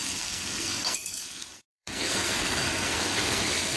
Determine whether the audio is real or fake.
fake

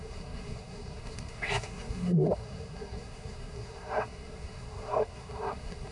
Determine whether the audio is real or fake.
fake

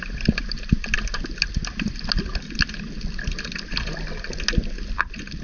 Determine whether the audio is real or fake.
real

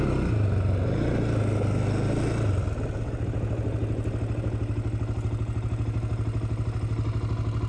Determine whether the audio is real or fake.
real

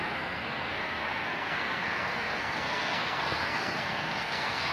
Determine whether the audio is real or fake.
fake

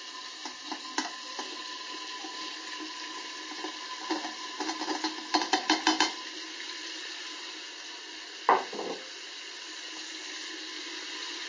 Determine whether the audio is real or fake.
real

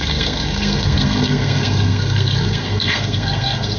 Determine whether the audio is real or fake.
fake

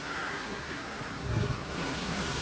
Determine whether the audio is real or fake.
fake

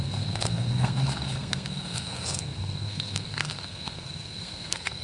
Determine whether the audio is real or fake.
fake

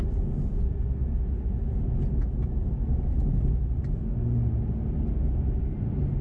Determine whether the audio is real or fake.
real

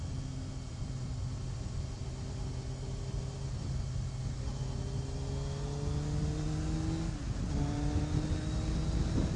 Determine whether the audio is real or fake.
real